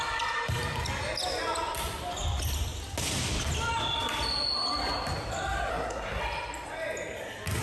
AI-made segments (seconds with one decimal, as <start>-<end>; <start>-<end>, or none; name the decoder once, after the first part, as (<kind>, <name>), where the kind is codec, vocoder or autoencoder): 5.7-6.2 (codec, SNAC)